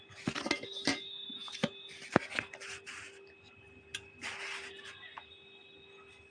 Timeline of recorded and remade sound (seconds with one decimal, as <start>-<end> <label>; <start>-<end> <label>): 0.0-6.3 recorded